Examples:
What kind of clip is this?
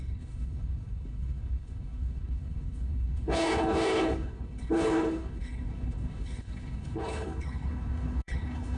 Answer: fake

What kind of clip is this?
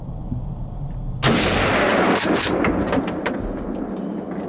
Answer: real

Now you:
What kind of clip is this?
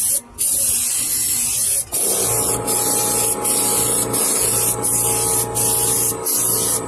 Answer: real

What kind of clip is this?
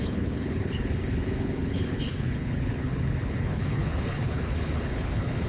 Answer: fake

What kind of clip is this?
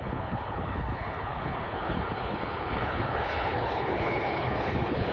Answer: fake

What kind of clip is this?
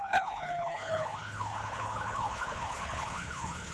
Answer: fake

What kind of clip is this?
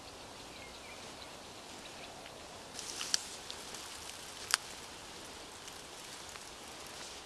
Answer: real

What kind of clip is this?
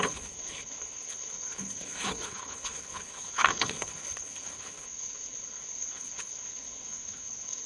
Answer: fake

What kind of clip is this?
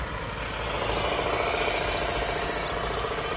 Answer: real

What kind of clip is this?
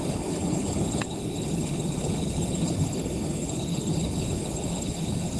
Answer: fake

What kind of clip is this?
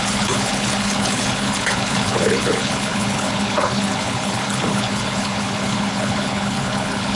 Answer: fake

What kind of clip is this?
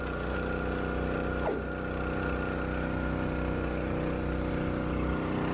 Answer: real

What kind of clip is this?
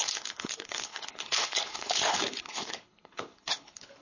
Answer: fake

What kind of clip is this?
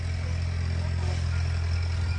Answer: real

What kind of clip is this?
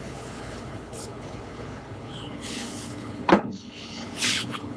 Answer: fake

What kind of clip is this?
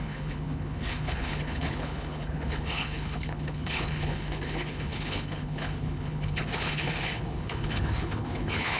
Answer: fake